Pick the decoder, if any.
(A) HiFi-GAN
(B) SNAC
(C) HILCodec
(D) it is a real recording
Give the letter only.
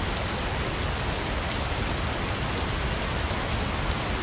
D